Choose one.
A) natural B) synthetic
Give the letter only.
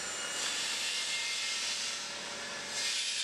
A